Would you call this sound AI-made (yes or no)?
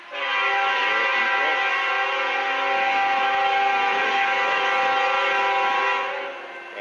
no